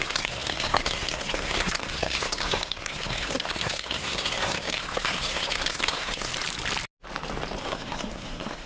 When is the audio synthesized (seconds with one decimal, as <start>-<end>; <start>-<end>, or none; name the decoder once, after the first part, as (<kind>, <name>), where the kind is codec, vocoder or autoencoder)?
0.0-6.3 (codec, SNAC); 7.6-8.7